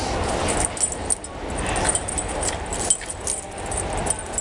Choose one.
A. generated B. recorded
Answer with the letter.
B